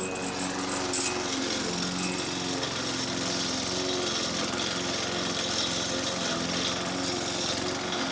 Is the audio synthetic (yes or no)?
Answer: no